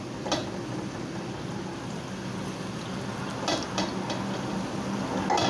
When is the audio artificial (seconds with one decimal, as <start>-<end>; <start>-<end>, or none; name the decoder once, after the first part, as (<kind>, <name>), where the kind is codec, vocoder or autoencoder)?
none